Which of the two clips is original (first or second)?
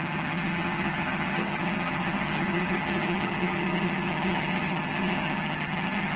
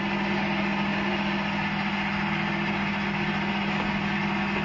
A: second